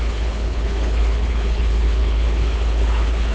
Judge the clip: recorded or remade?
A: remade